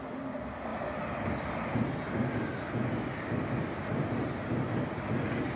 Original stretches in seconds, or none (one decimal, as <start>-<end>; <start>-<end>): 0.0-5.6